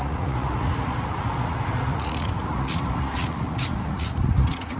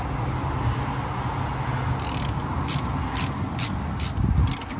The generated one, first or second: first